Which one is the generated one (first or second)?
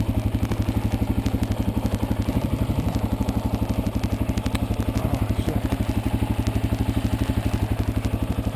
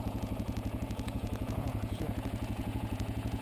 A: second